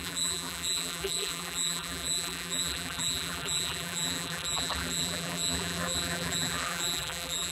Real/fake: fake